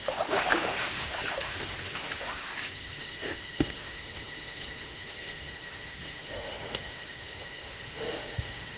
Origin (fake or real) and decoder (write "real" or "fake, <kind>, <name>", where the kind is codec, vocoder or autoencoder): fake, autoencoder, DAC-VAE